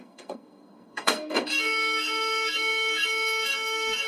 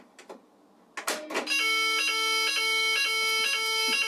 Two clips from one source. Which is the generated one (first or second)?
first